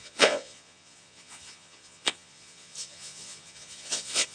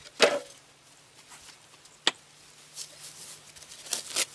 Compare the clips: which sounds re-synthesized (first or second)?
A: first